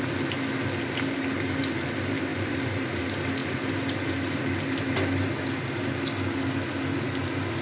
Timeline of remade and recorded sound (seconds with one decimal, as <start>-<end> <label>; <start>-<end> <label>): 0.0-2.3 recorded; 2.3-3.0 remade; 3.0-7.6 recorded